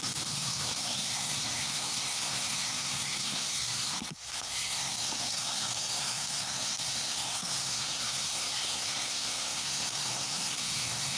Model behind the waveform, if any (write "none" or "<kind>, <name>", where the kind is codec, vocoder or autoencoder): codec, SNAC